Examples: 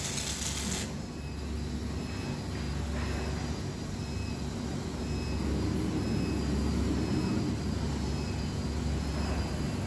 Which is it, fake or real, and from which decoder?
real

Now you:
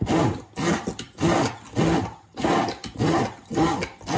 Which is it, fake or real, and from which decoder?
real